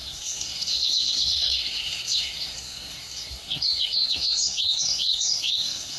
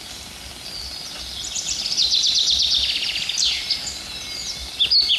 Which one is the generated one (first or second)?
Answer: first